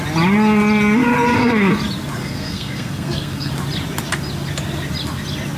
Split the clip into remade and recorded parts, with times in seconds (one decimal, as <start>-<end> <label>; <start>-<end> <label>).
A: 0.0-1.3 recorded; 1.3-1.8 remade; 1.8-2.2 recorded; 2.2-3.5 remade; 3.5-5.6 recorded

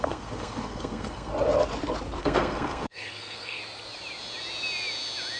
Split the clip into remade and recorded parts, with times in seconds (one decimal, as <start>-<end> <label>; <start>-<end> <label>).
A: 0.0-1.3 remade; 1.3-2.2 recorded; 2.2-3.6 remade; 3.6-5.4 recorded

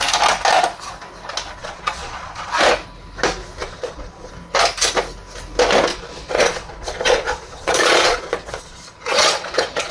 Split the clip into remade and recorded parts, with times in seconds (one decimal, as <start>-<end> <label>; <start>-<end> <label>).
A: 0.0-1.6 recorded; 1.6-2.5 remade; 2.5-3.6 recorded; 3.6-4.3 remade; 4.3-5.9 recorded; 5.9-9.9 remade